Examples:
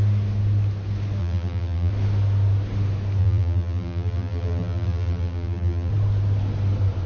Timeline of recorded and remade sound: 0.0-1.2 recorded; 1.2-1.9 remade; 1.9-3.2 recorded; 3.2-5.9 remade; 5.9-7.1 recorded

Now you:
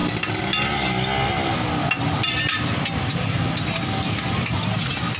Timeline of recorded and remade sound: 0.0-5.2 recorded

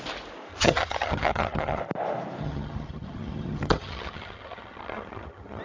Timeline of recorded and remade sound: 0.0-0.5 recorded; 0.5-1.8 remade; 1.8-2.4 recorded; 2.4-5.6 remade

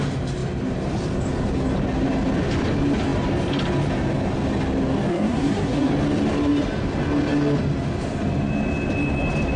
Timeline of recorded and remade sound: 0.0-5.1 recorded; 5.1-5.9 remade; 5.9-9.6 recorded

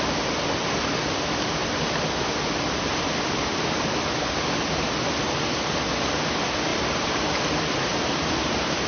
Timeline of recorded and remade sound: 0.0-6.7 recorded; 6.7-8.9 remade

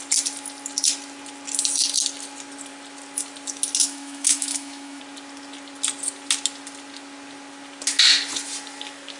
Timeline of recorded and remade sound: 0.0-3.8 recorded; 3.8-5.0 remade; 5.0-9.2 recorded

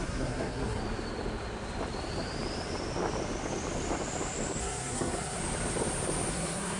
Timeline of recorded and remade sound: 0.0-0.8 remade; 0.8-4.6 recorded; 4.6-5.4 remade; 5.4-6.3 recorded; 6.3-6.8 remade

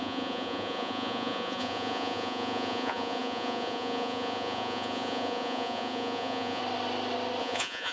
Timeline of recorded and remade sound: 0.0-6.6 remade; 6.6-7.4 recorded; 7.4-7.9 remade